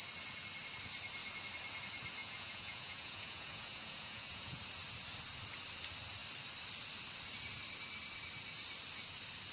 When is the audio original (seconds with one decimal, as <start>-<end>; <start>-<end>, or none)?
0.0-2.2; 4.6-9.5